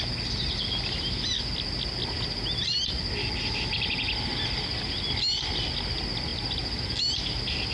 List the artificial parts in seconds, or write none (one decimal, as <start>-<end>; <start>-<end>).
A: none